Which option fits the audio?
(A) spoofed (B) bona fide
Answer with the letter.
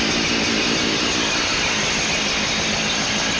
B